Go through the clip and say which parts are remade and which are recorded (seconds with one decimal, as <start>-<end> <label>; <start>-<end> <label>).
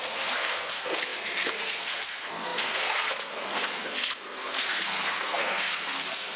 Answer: 0.0-6.4 remade